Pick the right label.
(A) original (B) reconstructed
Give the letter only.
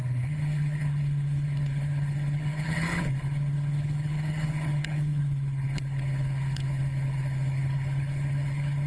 B